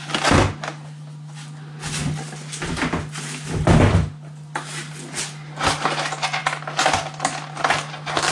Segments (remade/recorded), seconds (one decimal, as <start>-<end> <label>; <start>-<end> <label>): 0.0-8.3 recorded